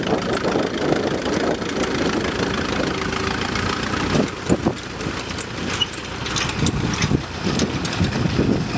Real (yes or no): yes